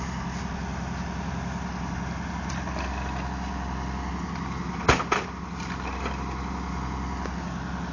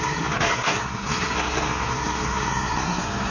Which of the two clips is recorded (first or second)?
first